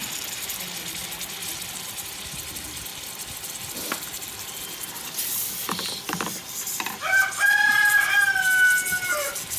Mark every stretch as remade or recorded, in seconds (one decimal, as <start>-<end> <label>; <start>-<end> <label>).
0.0-1.0 recorded; 1.0-1.5 remade; 1.5-2.9 recorded; 2.9-4.6 remade; 4.6-5.3 recorded; 5.3-8.4 remade; 8.4-9.6 recorded